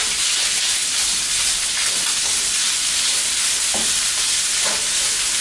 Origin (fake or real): real